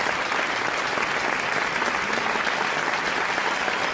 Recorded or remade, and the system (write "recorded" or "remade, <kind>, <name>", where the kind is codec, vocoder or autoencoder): recorded